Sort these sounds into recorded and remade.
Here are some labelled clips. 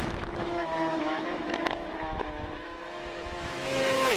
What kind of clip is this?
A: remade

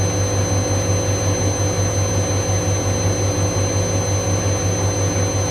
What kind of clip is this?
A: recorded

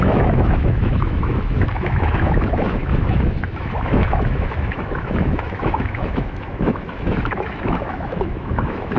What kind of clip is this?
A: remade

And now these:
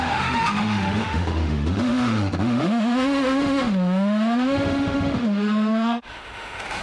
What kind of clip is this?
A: remade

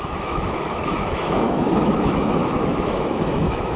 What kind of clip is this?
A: remade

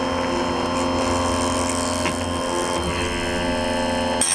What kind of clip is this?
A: recorded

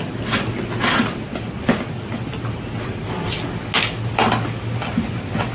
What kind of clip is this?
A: recorded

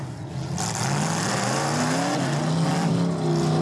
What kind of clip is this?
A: recorded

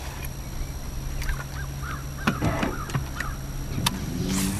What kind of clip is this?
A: recorded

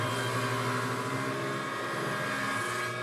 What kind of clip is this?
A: recorded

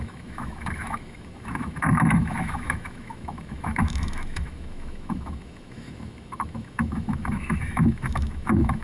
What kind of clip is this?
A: remade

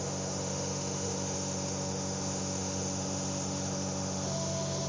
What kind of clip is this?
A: remade